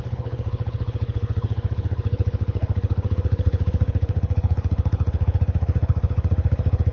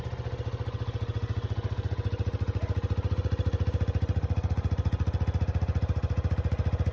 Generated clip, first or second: first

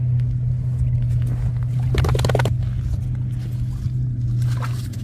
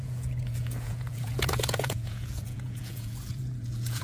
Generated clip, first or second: second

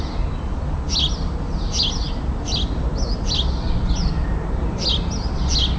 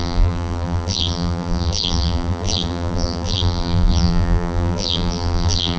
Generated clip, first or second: second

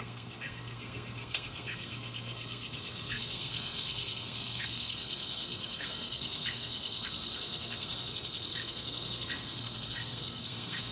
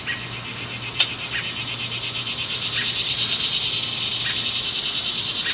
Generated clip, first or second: first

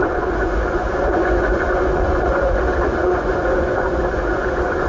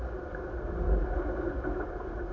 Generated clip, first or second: first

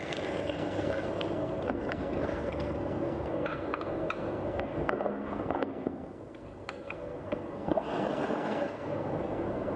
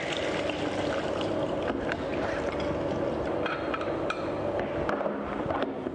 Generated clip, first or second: first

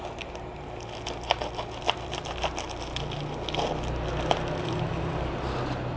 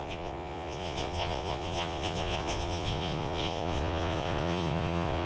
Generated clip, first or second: second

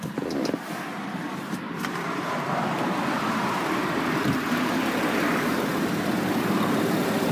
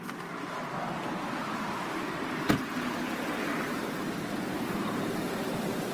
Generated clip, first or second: first